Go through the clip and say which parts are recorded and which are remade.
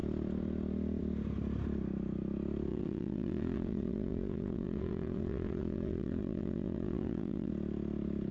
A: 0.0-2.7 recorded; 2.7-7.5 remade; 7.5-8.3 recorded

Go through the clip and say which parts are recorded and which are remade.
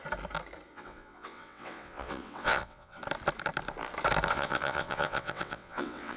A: 0.0-0.7 recorded; 0.7-3.0 remade; 3.0-4.3 recorded; 4.3-6.2 remade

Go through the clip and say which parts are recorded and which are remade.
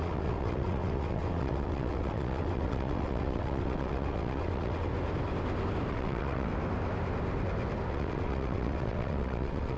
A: 0.0-4.9 remade; 4.9-5.9 recorded; 5.9-6.5 remade; 6.5-7.9 recorded; 7.9-9.8 remade